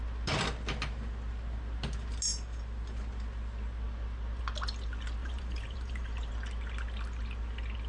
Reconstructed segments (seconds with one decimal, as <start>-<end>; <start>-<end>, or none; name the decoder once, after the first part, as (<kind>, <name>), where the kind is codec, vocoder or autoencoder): 5.2-6.3 (vocoder, BigVGAN v2)